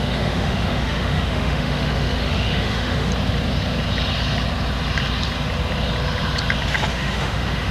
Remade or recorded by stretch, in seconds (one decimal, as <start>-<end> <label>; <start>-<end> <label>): 0.0-3.1 remade; 3.1-6.9 recorded; 6.9-7.7 remade